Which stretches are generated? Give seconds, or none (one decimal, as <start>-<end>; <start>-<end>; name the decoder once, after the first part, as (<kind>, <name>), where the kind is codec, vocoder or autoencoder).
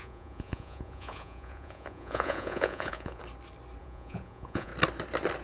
0.0-3.2 (vocoder, Vocos); 3.8-4.7